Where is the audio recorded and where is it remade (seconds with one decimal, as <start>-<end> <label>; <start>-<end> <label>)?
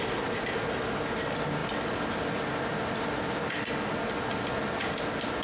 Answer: 0.0-5.4 recorded